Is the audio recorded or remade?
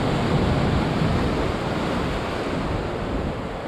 recorded